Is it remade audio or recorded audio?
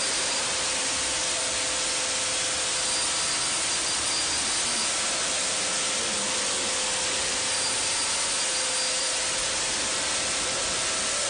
recorded